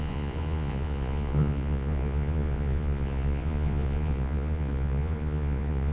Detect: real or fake fake